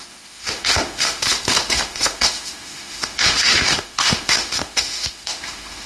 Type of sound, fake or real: fake